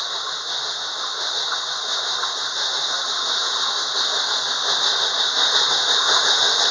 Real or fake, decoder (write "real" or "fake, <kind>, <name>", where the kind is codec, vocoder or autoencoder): real